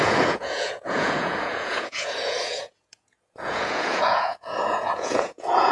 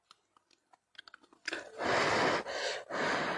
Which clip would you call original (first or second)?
second